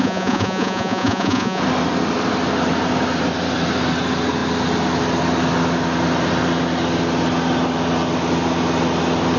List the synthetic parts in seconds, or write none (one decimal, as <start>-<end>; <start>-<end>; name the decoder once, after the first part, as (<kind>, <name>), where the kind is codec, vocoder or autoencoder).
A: 0.0-1.6 (vocoder, Vocos)